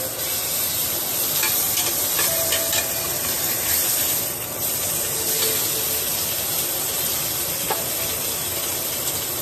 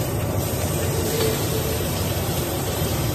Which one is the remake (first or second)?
second